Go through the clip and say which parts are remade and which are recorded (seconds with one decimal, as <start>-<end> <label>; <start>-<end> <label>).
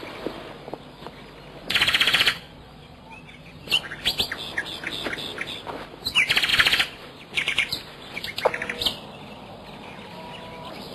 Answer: 0.0-1.6 recorded; 1.6-3.8 remade; 3.8-6.5 recorded; 6.5-8.2 remade; 8.2-10.9 recorded